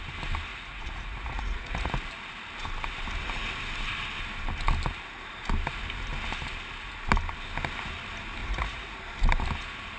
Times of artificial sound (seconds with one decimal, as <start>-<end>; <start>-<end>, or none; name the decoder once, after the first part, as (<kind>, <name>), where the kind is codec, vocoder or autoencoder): 0.5-1.9 (vocoder, Vocos); 8.4-9.0